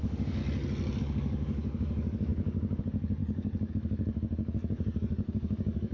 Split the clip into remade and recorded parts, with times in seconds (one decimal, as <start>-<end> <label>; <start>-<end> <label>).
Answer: 0.0-0.4 remade; 0.4-1.0 recorded; 1.0-5.9 remade